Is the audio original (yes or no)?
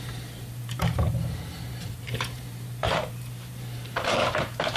no